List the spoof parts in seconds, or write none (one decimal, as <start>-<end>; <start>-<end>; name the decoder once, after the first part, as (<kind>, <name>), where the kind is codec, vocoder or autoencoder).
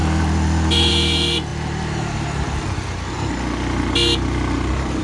none